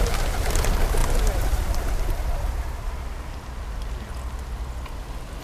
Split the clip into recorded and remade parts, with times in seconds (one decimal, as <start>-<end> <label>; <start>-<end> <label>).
0.0-5.4 recorded